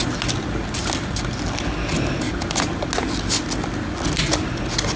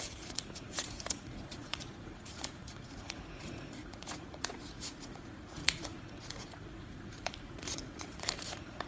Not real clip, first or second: second